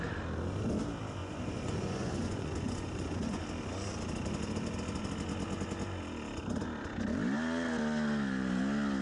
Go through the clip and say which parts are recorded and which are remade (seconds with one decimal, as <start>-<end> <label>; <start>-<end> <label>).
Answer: 0.0-1.2 recorded; 1.2-3.4 remade; 3.4-9.0 recorded